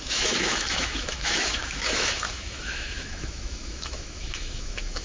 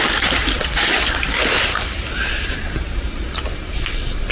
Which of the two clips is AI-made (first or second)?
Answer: first